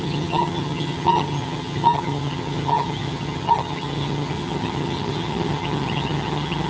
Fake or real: fake